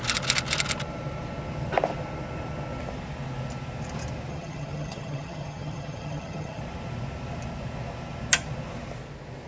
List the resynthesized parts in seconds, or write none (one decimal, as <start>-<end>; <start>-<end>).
4.3-6.6